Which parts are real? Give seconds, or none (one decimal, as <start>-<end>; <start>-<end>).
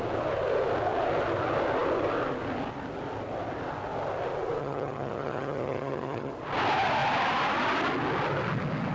0.0-4.6; 6.3-8.9